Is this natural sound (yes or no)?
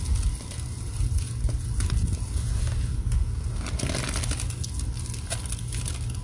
yes